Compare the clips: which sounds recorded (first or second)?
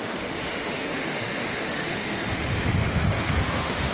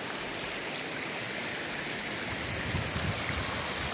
second